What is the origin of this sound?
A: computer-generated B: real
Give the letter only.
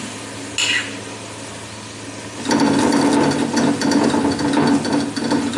B